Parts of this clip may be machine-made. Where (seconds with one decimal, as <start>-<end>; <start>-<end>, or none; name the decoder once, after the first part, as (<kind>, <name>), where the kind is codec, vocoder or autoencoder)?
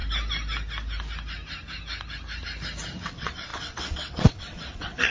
3.1-5.1 (vocoder, WaveNeXt)